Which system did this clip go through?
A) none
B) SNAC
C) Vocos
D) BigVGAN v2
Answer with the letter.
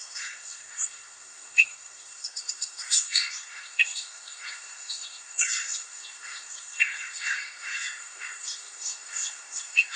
B